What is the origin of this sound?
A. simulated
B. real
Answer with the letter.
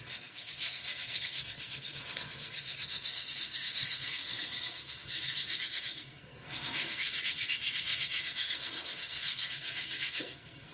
A